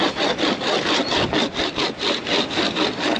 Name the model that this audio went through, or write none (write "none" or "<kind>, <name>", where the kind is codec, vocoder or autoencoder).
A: vocoder, BigVGAN v2